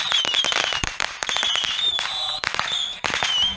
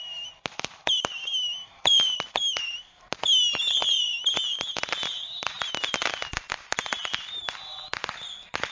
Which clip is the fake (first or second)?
first